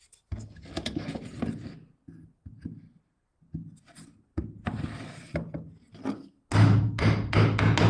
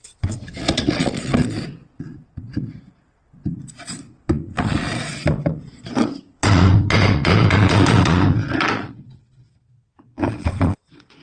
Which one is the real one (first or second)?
first